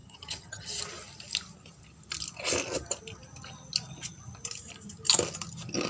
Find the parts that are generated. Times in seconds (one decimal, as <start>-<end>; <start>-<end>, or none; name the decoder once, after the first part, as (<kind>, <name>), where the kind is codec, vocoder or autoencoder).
0.0-0.7 (vocoder, HiFi-GAN)